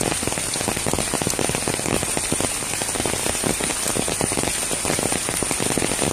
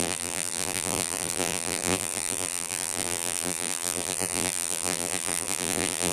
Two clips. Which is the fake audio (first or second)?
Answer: second